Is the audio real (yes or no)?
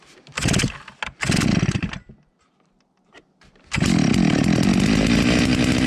yes